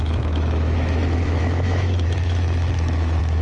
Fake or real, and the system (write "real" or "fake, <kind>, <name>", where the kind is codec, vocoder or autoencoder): fake, autoencoder, DAC-VAE